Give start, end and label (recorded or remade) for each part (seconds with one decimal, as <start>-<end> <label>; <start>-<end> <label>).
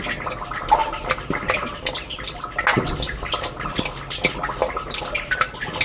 0.0-5.8 recorded